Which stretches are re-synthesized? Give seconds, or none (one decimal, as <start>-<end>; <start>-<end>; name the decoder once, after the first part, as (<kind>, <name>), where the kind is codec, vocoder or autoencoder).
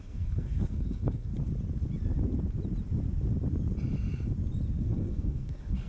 0.0-1.3 (codec, SNAC); 4.8-5.9